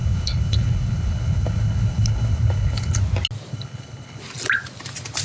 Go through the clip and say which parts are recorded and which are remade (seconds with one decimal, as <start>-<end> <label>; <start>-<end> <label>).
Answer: 0.0-3.0 remade; 3.0-3.5 recorded; 3.5-4.2 remade; 4.2-5.2 recorded

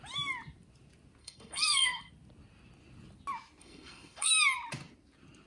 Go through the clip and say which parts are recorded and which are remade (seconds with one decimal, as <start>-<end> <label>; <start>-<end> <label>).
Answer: 0.0-1.2 recorded; 1.2-2.1 remade; 2.1-3.6 recorded; 3.6-4.3 remade; 4.3-5.5 recorded

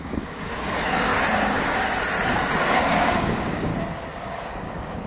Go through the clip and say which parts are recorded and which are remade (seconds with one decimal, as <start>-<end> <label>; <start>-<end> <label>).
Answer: 0.0-1.1 remade; 1.1-2.7 recorded; 2.7-3.7 remade; 3.7-4.3 recorded; 4.3-5.1 remade

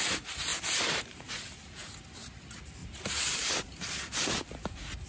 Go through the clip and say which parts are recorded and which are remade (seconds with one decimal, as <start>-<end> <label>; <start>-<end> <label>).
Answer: 0.0-0.5 recorded; 0.5-1.4 remade; 1.4-2.8 recorded; 2.8-4.0 remade; 4.0-5.1 recorded

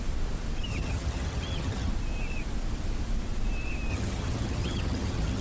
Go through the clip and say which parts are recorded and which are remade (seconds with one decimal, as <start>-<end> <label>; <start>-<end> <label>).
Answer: 0.0-0.7 recorded; 0.7-1.9 remade; 1.9-3.9 recorded; 3.9-5.4 remade